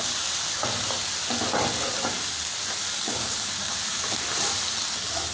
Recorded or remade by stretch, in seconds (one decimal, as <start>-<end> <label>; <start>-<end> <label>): 0.0-2.9 recorded; 2.9-3.8 remade; 3.8-5.3 recorded